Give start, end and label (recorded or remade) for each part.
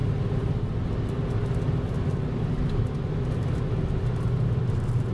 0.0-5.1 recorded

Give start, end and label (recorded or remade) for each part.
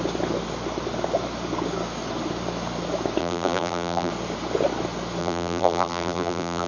0.0-3.2 recorded; 3.2-4.1 remade; 4.1-5.2 recorded; 5.2-6.7 remade